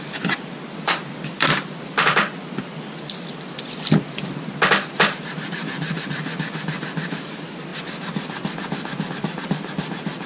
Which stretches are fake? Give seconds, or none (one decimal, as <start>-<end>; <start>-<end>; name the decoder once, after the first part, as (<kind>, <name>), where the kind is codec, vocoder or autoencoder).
0.0-7.7 (vocoder, BigVGAN v2); 9.1-10.3